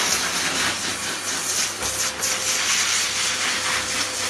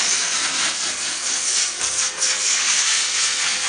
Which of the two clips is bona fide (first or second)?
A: first